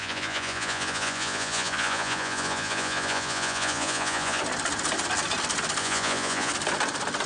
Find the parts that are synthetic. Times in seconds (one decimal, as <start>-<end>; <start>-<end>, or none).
0.0-4.4; 5.8-6.5